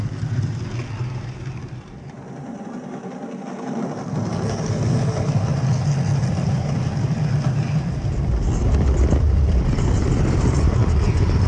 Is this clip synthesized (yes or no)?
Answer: no